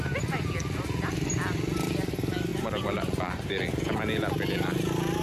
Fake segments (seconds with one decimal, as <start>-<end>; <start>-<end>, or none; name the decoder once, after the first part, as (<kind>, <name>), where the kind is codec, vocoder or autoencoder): 2.5-3.6 (vocoder, BigVGAN v2)